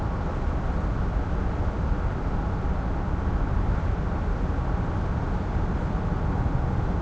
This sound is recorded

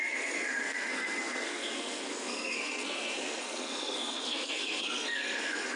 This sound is remade